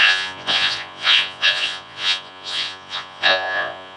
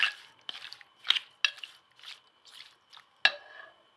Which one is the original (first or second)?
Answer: second